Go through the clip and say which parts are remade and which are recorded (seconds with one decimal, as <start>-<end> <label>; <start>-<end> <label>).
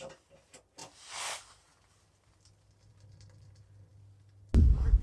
0.0-5.0 recorded